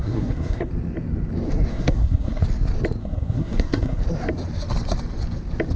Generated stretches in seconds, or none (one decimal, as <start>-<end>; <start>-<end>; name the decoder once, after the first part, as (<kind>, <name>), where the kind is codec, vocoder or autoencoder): 0.0-0.7 (codec, SNAC); 1.7-2.4; 3.0-4.0